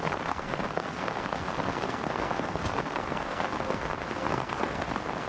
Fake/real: fake